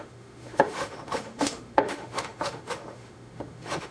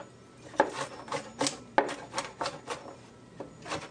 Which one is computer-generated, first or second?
first